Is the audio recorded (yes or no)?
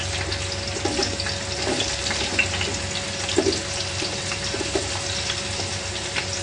yes